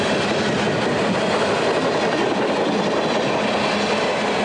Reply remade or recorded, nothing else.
recorded